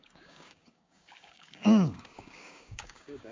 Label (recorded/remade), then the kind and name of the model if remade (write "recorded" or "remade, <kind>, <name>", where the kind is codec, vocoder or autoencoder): remade, codec, DAC